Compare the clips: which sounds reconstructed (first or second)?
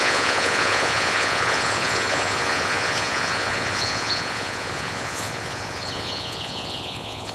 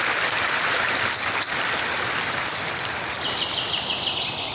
first